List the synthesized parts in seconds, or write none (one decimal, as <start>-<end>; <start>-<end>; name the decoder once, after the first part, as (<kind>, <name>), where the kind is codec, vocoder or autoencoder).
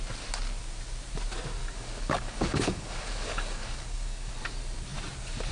1.6-4.3 (codec, DAC)